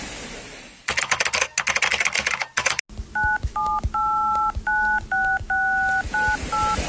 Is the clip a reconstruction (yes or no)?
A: no